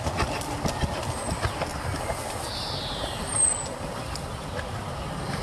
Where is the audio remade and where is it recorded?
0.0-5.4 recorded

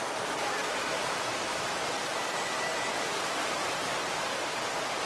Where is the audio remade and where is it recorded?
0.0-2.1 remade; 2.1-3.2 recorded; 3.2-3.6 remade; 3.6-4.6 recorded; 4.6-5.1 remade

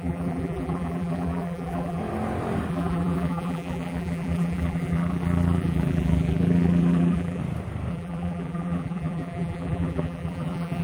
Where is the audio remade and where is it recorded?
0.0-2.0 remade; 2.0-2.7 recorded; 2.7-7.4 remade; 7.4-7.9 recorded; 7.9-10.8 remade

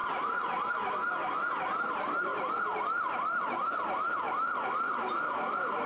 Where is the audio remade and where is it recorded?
0.0-0.7 remade; 0.7-5.9 recorded